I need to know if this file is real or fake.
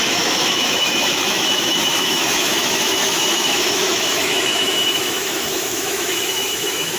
fake